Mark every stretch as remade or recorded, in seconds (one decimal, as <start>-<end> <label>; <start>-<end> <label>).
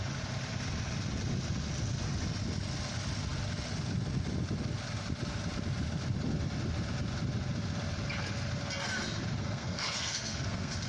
0.0-9.4 recorded; 9.4-10.9 remade